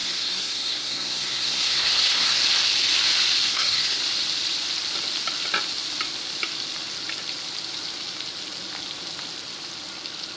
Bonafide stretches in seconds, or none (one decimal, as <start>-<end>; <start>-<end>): 2.4-3.5; 4.0-10.4